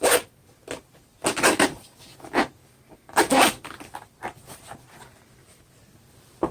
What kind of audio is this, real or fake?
real